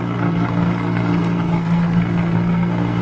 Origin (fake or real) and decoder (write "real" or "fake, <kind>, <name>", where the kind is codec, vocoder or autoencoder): fake, codec, SNAC